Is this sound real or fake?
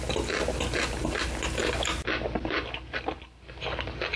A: real